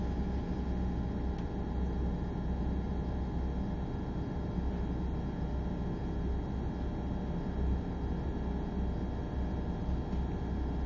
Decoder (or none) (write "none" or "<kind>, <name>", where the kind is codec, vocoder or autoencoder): none